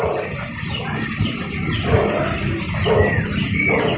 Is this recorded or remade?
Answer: recorded